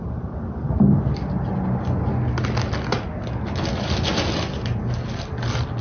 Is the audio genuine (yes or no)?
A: yes